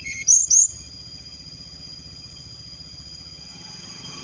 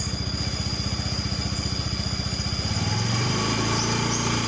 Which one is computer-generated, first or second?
first